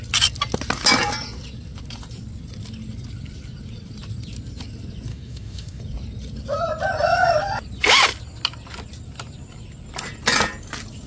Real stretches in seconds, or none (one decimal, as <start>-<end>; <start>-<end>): 0.0-5.1; 5.8-11.1